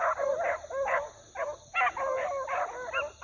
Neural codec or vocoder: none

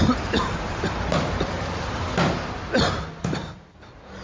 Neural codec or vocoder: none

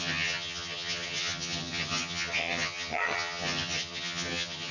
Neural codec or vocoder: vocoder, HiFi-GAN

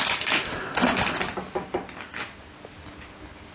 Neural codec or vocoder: none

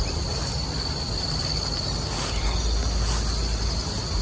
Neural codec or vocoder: none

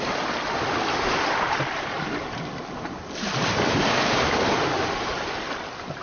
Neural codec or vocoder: none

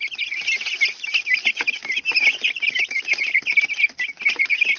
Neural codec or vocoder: none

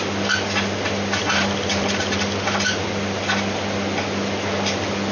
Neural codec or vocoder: none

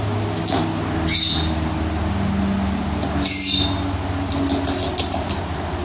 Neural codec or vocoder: none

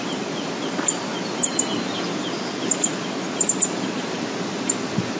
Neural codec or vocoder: none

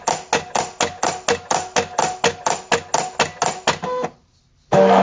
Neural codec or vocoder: none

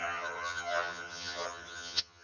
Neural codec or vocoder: vocoder, HiFi-GAN